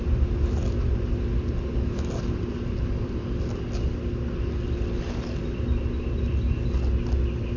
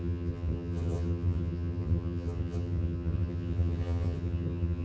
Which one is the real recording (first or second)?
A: first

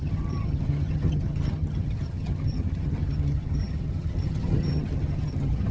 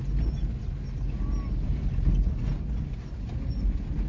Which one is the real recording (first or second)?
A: second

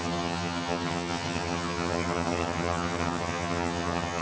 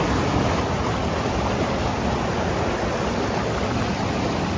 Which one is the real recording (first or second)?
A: second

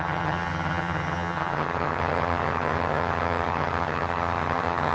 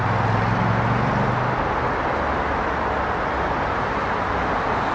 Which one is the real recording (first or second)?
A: second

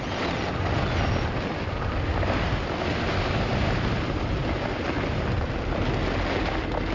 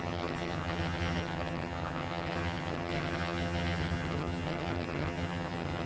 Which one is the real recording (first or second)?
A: first